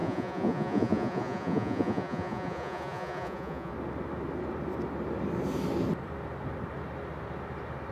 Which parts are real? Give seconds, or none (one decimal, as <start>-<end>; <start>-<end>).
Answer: 3.7-7.9